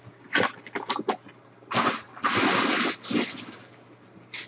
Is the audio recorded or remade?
recorded